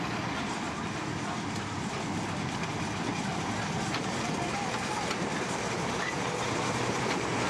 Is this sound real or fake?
real